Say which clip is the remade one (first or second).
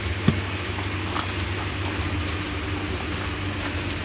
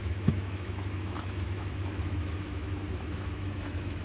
second